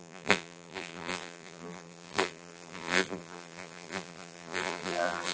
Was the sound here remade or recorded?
remade